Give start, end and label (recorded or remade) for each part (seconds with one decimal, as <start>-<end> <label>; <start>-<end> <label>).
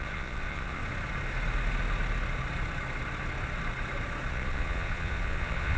0.0-0.8 remade; 0.8-4.3 recorded; 4.3-5.8 remade